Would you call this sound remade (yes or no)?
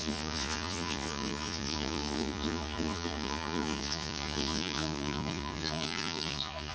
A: yes